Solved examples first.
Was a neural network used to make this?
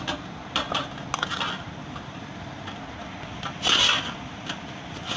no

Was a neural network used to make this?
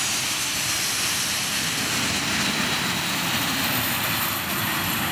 no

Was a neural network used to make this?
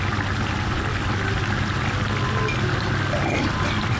no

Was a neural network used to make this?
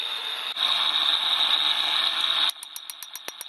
no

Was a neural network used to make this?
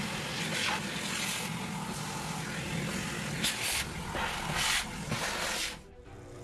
no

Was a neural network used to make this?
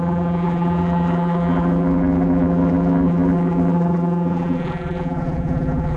yes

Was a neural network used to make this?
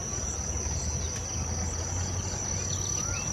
no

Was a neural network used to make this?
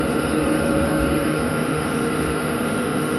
yes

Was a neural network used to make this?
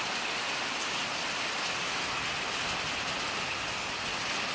no